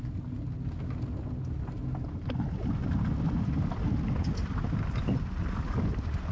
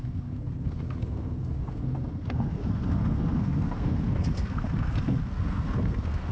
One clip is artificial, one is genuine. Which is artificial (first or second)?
second